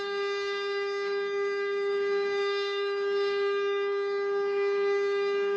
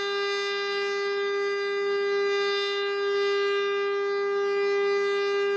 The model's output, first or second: first